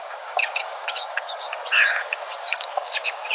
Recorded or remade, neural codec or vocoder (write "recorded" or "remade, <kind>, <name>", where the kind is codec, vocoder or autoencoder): remade, codec, DAC